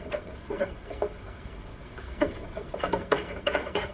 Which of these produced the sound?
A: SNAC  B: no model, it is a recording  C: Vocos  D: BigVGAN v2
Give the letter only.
A